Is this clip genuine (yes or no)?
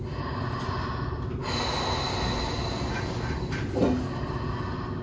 yes